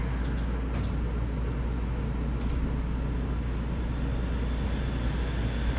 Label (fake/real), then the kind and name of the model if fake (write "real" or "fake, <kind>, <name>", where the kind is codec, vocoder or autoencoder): real